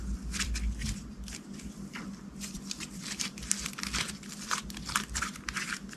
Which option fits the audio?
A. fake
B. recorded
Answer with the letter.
A